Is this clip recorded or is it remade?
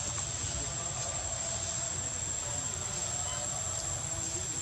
recorded